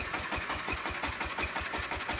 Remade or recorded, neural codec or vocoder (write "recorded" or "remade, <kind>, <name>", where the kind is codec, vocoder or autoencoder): remade, vocoder, Vocos